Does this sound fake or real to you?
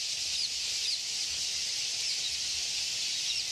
real